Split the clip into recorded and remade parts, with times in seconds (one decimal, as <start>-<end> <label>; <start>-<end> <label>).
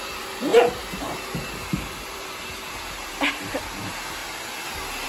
0.0-4.2 remade; 4.2-5.1 recorded